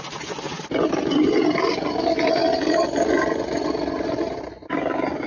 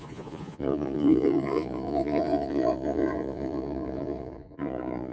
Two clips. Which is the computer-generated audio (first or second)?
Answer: second